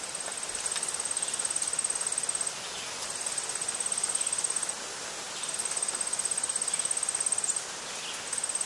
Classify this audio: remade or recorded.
recorded